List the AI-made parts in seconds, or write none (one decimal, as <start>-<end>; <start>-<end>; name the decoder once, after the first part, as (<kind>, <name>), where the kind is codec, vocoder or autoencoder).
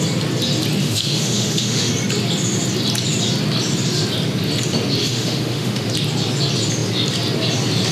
0.8-1.9 (autoencoder, DAC-VAE); 5.0-5.9